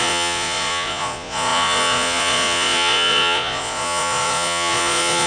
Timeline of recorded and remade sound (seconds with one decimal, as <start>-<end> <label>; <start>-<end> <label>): 0.0-5.3 remade

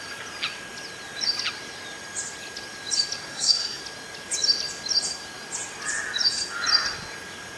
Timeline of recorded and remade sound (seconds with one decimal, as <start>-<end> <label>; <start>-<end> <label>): 0.0-3.3 recorded; 3.3-3.8 remade; 3.8-7.6 recorded